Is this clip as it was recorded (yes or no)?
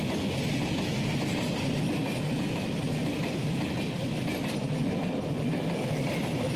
yes